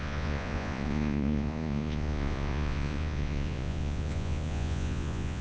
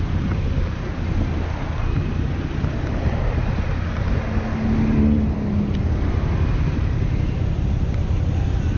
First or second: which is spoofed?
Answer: first